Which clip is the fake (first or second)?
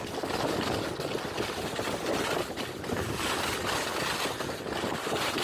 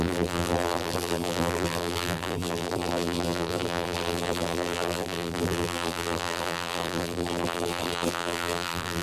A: second